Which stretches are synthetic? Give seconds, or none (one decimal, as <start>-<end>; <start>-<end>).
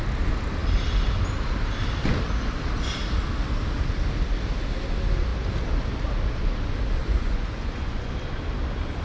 7.0-8.1